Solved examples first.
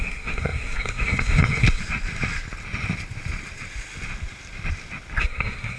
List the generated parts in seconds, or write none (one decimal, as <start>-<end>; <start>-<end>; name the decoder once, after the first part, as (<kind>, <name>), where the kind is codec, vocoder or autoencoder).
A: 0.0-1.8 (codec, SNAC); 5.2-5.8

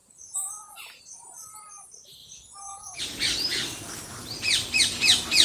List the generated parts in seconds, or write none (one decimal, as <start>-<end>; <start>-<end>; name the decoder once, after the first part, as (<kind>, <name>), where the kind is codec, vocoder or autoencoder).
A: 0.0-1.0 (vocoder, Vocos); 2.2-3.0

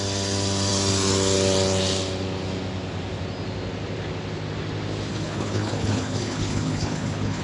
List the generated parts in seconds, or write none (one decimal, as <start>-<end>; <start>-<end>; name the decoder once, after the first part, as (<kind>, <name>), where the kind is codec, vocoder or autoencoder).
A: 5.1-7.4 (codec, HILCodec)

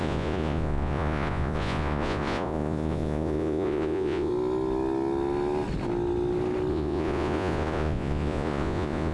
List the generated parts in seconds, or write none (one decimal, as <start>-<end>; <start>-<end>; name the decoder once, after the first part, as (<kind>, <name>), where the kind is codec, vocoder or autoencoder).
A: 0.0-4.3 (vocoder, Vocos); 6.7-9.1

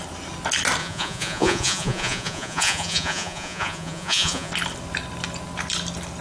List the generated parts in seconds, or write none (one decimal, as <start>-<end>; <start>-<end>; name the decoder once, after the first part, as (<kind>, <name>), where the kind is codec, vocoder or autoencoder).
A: 0.8-4.5 (vocoder, Vocos)